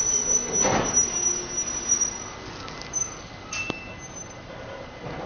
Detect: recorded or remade recorded